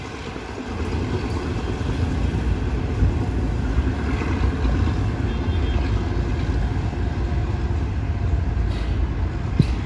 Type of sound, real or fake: real